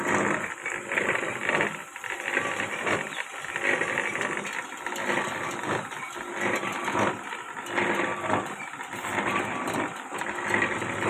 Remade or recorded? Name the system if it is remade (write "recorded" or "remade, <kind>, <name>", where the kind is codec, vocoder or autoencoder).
recorded